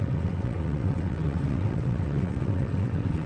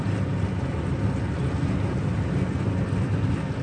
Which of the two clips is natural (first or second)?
second